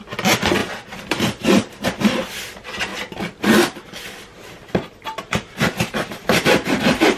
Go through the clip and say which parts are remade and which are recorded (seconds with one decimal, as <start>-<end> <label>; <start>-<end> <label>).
0.0-0.6 recorded; 0.6-2.3 remade; 2.3-4.3 recorded; 4.3-7.2 remade